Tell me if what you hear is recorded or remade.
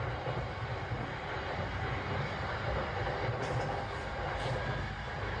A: recorded